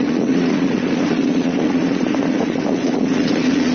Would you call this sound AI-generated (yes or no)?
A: yes